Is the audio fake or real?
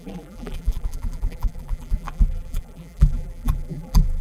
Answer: fake